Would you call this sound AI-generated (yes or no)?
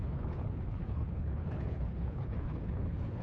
yes